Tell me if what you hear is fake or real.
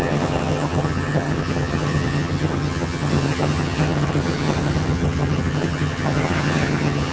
fake